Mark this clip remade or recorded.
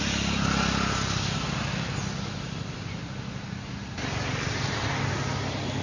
recorded